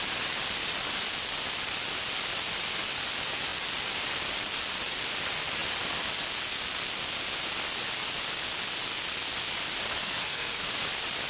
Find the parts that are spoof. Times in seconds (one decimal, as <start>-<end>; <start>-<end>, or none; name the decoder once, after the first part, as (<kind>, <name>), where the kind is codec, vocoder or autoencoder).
10.0-10.7 (codec, SNAC)